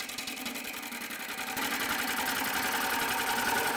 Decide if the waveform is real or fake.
real